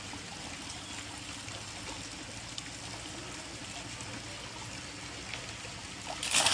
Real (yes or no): yes